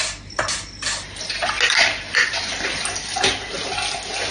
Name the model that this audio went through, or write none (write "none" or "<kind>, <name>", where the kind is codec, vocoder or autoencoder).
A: none